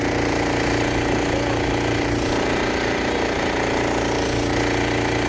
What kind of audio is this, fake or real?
real